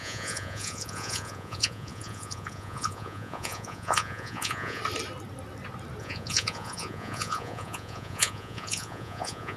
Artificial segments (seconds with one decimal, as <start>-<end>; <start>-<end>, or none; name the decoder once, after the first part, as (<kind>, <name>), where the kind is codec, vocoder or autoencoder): 0.0-4.8 (vocoder, Vocos); 6.0-9.6